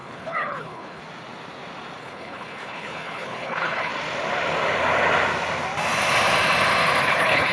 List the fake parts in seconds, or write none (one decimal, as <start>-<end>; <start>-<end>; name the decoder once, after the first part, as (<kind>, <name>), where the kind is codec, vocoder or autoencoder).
0.0-1.0 (codec, HILCodec); 2.0-3.9; 7.0-7.5